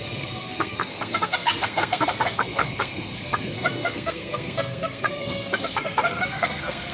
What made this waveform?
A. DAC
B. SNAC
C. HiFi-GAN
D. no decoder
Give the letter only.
B